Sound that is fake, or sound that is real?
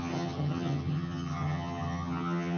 fake